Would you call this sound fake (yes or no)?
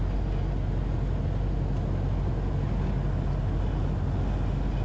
no